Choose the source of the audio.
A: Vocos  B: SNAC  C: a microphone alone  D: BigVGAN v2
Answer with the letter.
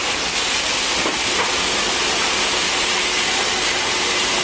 C